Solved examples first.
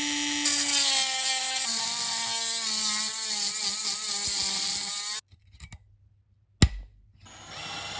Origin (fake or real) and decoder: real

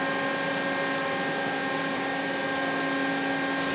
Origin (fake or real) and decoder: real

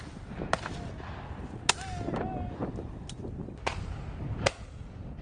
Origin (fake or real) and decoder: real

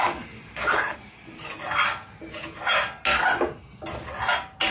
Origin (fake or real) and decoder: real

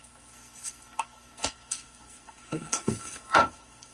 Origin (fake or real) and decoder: fake, codec, SNAC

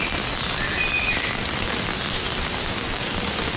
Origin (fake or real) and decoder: real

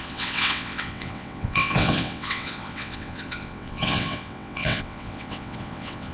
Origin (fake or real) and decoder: fake, vocoder, WaveNeXt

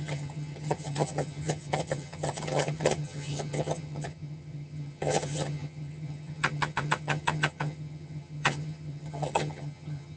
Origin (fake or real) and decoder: fake, vocoder, HiFi-GAN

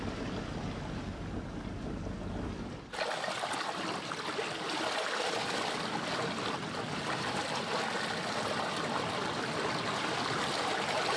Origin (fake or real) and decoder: real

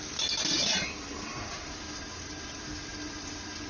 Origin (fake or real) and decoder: real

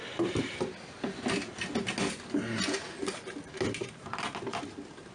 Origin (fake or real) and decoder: real